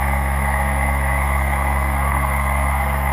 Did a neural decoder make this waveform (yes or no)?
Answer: yes